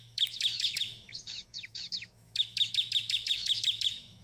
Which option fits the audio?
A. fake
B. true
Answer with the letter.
A